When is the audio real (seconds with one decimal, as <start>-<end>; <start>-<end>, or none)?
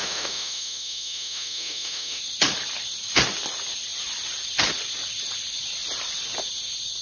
2.2-7.0